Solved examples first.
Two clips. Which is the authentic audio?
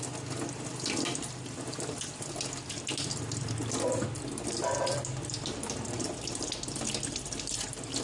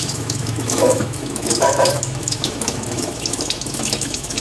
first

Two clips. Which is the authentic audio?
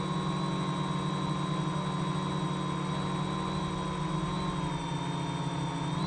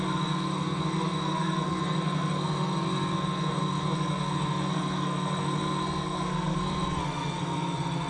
first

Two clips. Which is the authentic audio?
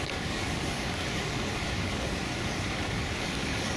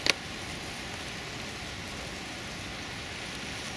second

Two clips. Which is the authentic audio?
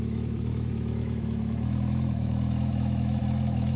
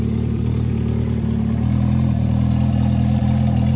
second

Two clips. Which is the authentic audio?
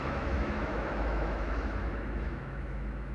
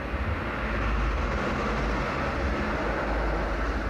second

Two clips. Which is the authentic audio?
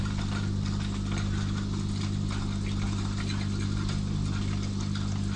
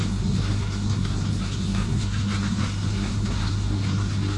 first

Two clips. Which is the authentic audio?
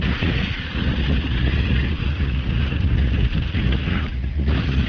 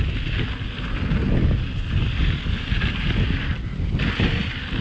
second